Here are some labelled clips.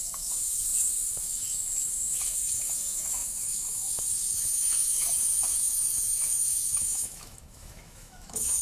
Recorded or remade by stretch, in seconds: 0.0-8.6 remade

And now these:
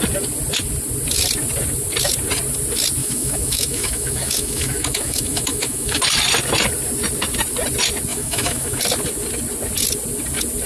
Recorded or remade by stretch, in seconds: 0.0-3.0 recorded; 3.0-6.0 remade; 6.0-8.1 recorded; 8.1-8.8 remade; 8.8-10.7 recorded

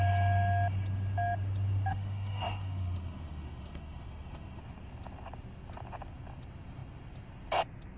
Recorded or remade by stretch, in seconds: 0.0-1.9 recorded; 1.9-4.6 remade; 4.6-8.0 recorded

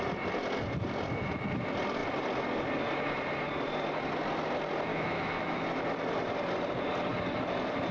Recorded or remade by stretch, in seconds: 0.0-4.9 recorded; 4.9-5.6 remade; 5.6-7.9 recorded

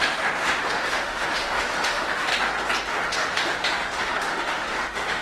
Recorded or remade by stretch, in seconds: 0.0-2.3 remade; 2.3-2.9 recorded; 2.9-5.2 remade

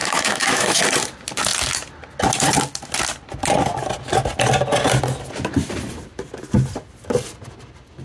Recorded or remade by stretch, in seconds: 0.0-0.8 remade; 0.8-8.0 recorded